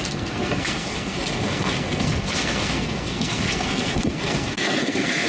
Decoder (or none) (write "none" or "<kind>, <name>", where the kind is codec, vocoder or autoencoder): codec, SNAC